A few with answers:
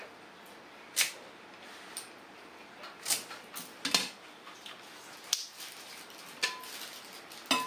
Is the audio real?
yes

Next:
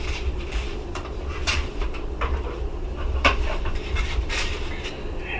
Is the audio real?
no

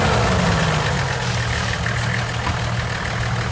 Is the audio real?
yes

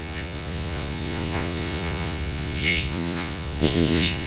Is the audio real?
no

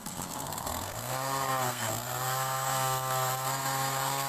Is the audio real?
no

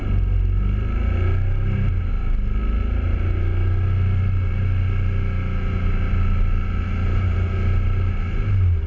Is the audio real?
yes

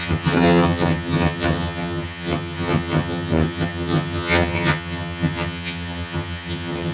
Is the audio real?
no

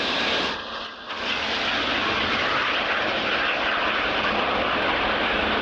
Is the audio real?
yes